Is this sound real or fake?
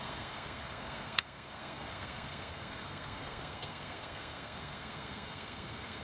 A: fake